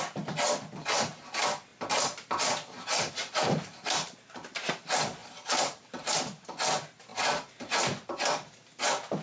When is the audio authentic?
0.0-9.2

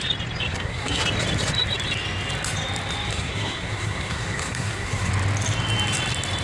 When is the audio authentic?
0.0-0.5; 1.0-3.1; 5.1-6.4

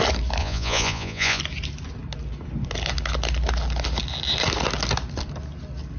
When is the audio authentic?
0.0-0.4; 1.4-6.0